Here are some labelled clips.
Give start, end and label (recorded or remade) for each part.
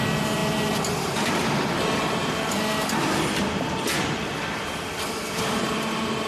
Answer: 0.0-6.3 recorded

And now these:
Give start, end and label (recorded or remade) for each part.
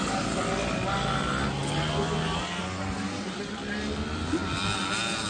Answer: 0.0-5.3 recorded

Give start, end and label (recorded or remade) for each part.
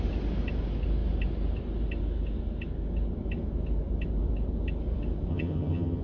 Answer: 0.0-5.3 recorded; 5.3-6.0 remade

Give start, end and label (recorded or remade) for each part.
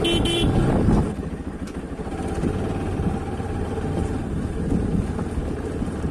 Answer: 0.0-0.6 recorded; 0.6-1.3 remade; 1.3-6.1 recorded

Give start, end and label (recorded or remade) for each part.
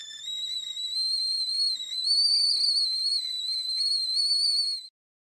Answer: 0.0-5.4 recorded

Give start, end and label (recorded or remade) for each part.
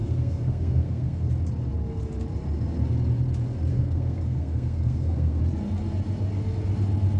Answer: 0.0-1.3 remade; 1.3-3.7 recorded; 3.7-5.4 remade; 5.4-7.2 recorded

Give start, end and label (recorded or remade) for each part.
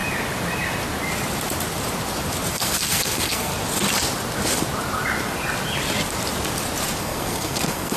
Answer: 0.0-2.5 recorded; 2.5-3.5 remade; 3.5-7.0 recorded; 7.0-8.0 remade